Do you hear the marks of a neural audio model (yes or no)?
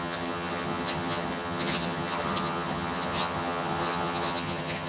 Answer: yes